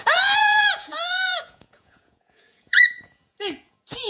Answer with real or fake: fake